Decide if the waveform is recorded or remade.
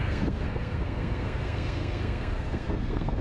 remade